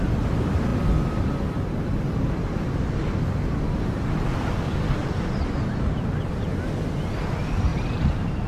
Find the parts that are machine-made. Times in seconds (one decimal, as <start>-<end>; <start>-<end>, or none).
5.0-5.7; 7.7-8.5